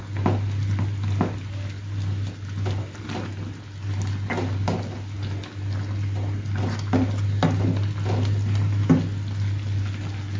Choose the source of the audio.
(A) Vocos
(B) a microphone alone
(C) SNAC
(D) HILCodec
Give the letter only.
B